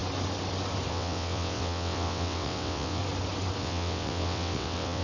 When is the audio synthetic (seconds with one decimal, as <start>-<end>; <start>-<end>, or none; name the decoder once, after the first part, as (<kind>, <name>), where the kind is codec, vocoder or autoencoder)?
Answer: 0.9-3.0 (vocoder, WaveNeXt); 3.6-5.0